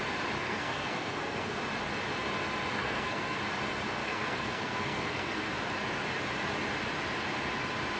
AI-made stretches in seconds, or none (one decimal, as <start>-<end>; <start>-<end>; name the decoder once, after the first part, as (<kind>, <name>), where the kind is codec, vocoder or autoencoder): 0.4-1.6 (codec, SNAC); 2.7-3.4; 4.0-5.5